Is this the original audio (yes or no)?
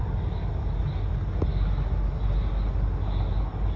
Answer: yes